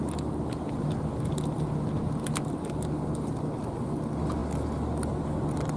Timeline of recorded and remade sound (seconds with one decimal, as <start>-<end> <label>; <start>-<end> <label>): 0.0-5.8 recorded